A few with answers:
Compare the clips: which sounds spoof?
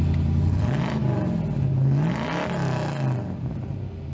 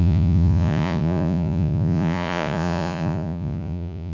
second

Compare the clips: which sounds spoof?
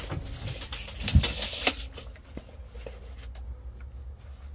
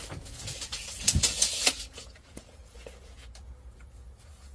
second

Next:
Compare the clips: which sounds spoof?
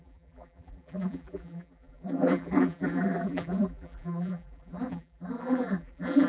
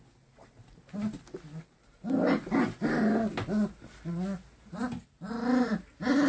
first